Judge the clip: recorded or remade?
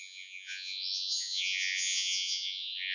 remade